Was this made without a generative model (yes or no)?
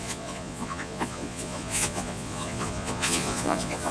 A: no